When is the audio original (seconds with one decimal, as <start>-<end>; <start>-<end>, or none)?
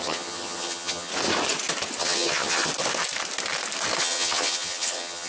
1.1-2.0; 2.7-4.0